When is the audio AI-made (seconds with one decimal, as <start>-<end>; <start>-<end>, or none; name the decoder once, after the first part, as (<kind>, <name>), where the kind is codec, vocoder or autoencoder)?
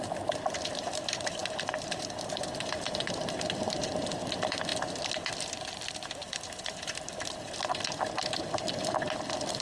0.0-4.7 (vocoder, BigVGAN v2); 6.5-9.6